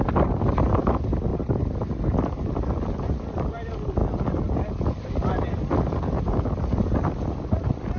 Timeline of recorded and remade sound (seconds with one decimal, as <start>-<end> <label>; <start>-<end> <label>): 0.0-8.0 recorded